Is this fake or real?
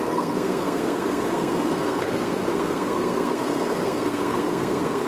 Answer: fake